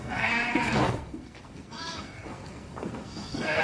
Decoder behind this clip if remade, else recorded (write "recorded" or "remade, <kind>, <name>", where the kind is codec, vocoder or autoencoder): remade, codec, SNAC